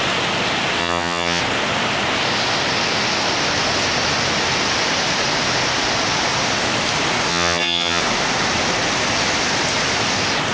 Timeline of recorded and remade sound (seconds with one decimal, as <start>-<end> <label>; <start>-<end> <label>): 0.0-0.8 recorded; 0.8-1.4 remade; 1.4-7.3 recorded; 7.3-8.0 remade; 8.0-10.5 recorded